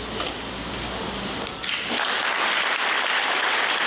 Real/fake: real